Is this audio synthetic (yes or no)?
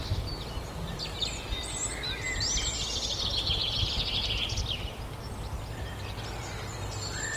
no